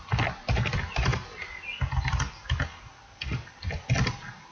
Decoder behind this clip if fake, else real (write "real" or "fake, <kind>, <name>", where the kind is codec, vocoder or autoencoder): real